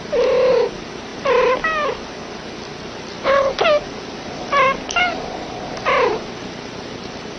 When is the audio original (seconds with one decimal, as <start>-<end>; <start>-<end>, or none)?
0.0-7.4